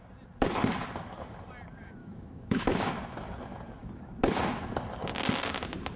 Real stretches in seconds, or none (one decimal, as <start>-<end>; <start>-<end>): 0.0-2.0; 2.9-6.0